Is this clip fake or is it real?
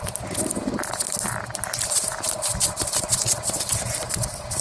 fake